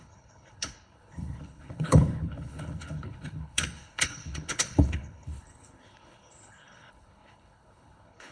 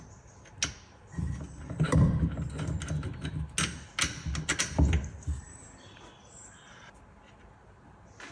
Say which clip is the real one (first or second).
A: second